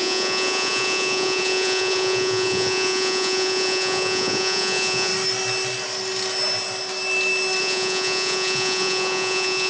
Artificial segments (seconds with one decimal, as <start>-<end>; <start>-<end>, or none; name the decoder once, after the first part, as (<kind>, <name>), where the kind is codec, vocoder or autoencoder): 0.0-5.1 (vocoder, Vocos); 7.6-9.7